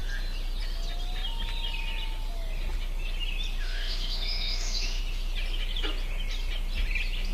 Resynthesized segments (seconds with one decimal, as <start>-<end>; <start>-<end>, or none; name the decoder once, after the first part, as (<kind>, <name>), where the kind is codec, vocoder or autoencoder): 3.6-5.0 (autoencoder, DAC-VAE)